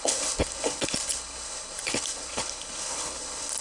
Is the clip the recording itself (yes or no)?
no